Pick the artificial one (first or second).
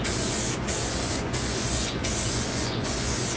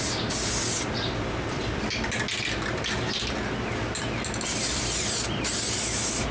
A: first